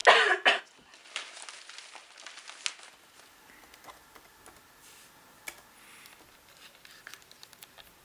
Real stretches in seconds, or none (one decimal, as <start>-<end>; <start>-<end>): 0.0-1.0; 1.6-8.0